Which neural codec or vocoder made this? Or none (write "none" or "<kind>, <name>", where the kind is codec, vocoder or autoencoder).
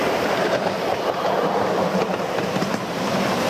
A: vocoder, BigVGAN v2